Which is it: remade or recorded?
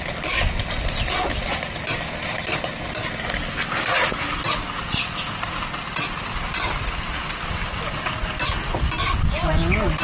recorded